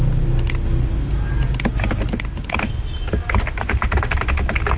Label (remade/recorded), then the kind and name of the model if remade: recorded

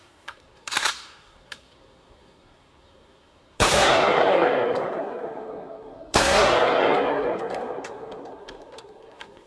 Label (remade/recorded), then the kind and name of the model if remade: remade, codec, SNAC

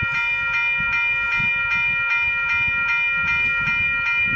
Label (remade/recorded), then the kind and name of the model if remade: recorded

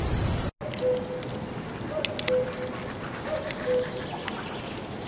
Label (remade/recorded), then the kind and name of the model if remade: recorded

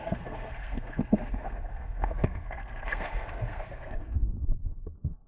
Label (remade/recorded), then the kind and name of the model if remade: remade, codec, SNAC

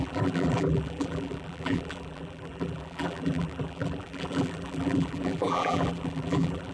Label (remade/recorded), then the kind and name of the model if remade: remade, vocoder, BigVGAN v2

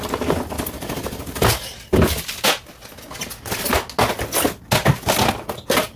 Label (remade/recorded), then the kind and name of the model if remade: recorded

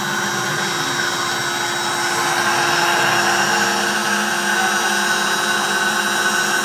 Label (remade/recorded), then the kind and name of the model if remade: recorded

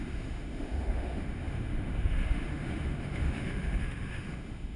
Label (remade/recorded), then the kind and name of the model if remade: remade, autoencoder, DAC-VAE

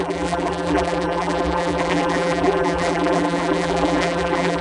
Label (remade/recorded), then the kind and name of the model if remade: remade, vocoder, BigVGAN v2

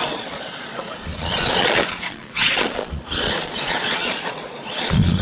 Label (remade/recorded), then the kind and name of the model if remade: remade, vocoder, Vocos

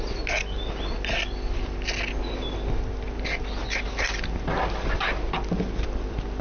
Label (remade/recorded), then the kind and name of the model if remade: recorded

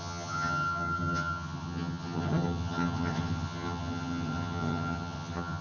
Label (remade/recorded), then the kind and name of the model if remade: remade, vocoder, HiFi-GAN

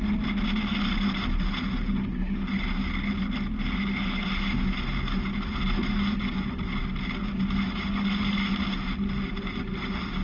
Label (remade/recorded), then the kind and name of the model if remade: recorded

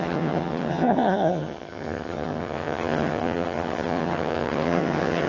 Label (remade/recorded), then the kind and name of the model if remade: remade, vocoder, HiFi-GAN